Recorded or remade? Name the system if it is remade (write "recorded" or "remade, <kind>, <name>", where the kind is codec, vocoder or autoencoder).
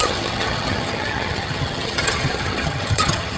remade, vocoder, HiFi-GAN